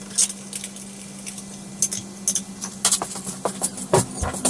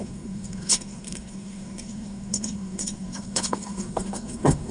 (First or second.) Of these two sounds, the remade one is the second